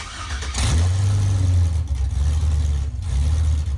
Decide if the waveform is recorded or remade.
recorded